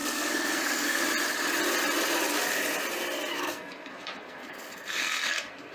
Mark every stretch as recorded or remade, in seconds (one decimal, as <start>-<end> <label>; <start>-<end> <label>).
0.0-1.0 remade; 1.0-3.3 recorded; 3.3-5.7 remade